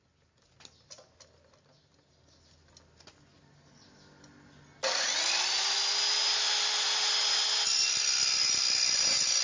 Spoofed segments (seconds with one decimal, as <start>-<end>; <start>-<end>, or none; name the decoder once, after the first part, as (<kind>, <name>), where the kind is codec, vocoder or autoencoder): none